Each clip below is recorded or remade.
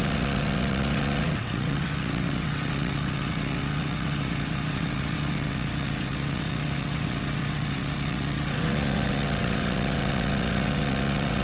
remade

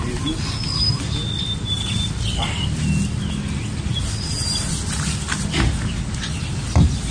recorded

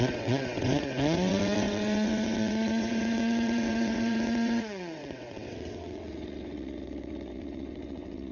remade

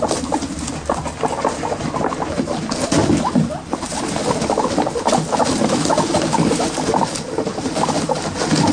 recorded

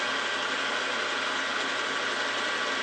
recorded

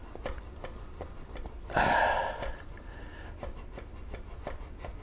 recorded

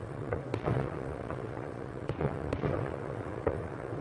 remade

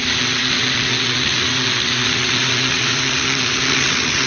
remade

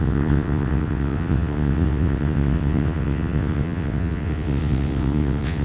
remade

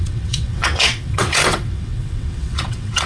remade